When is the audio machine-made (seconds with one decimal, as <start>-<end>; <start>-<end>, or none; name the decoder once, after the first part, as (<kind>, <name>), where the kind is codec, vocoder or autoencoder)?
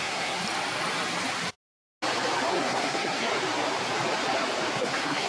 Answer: 0.0-0.4 (codec, SNAC); 2.5-3.3; 4.7-5.3